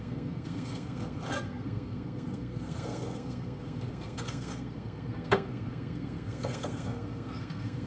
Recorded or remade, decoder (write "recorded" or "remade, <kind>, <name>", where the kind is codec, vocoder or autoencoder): remade, codec, SNAC